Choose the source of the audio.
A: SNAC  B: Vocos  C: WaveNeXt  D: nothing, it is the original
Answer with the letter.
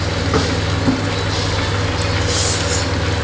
D